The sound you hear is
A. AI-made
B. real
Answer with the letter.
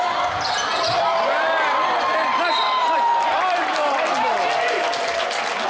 A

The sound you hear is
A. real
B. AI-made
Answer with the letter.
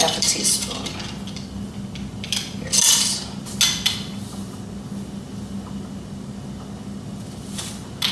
A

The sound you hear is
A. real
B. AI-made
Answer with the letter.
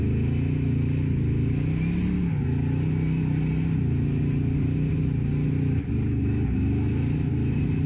A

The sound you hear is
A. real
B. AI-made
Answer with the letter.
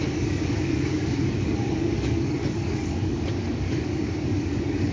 B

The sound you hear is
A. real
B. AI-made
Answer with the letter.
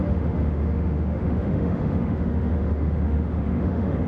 B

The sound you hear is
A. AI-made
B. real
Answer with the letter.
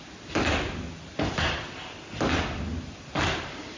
B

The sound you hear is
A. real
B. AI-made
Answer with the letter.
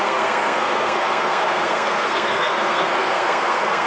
B